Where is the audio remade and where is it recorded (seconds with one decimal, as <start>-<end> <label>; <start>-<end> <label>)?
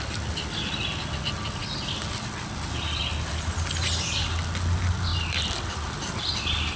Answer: 0.0-6.8 recorded